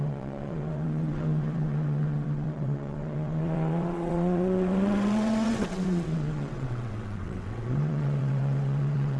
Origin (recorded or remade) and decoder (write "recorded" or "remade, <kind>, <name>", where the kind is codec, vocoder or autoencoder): remade, vocoder, WaveNeXt